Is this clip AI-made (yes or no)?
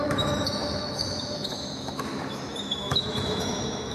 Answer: yes